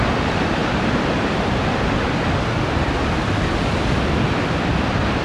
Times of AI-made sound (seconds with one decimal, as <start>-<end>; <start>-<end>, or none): 0.0-0.6; 3.7-5.2